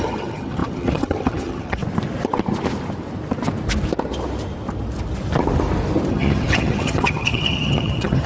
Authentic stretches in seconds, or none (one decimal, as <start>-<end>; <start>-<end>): 1.8-6.1